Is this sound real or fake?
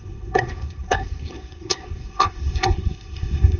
fake